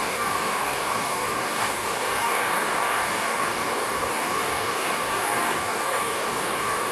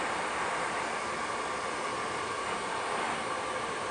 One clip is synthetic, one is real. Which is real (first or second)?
second